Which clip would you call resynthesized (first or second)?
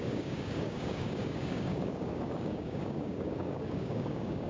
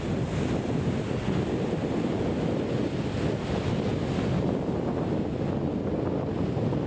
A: first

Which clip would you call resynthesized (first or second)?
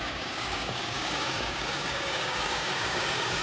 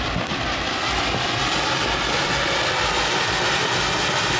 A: first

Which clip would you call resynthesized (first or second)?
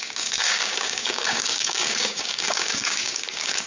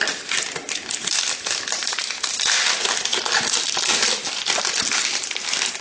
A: first